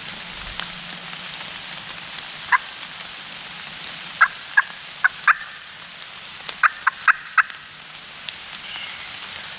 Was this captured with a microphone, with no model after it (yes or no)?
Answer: yes